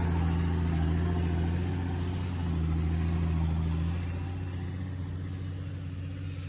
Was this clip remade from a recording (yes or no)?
no